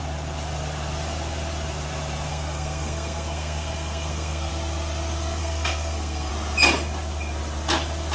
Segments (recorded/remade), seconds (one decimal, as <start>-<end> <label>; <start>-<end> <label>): 0.0-2.3 recorded; 2.3-4.5 remade; 4.5-5.4 recorded; 5.4-6.3 remade; 6.3-8.1 recorded